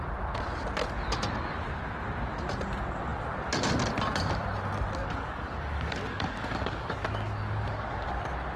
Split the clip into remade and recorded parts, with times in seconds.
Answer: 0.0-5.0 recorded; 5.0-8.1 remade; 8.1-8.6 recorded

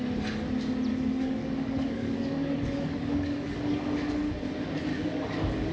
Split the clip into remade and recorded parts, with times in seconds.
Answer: 0.0-0.9 recorded; 0.9-4.3 remade; 4.3-4.9 recorded; 4.9-5.7 remade

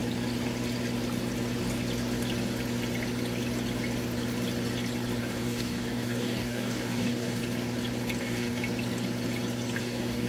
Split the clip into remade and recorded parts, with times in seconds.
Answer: 0.0-5.2 recorded; 5.2-7.4 remade; 7.4-8.2 recorded; 8.2-8.6 remade; 8.6-9.8 recorded; 9.8-10.3 remade

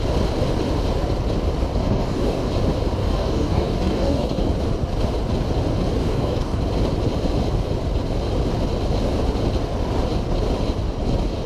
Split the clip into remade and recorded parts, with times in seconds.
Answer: 0.0-1.8 recorded; 1.8-2.5 remade; 2.5-3.0 recorded; 3.0-4.5 remade; 4.5-6.0 recorded; 6.0-6.6 remade; 6.6-11.5 recorded